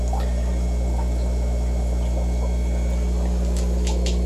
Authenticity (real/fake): real